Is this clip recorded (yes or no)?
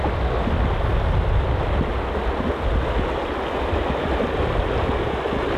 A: yes